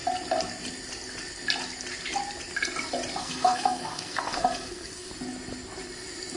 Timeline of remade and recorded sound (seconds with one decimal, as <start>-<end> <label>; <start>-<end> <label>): 0.0-3.2 recorded; 3.2-5.1 remade; 5.1-6.4 recorded